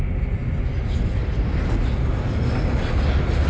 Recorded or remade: recorded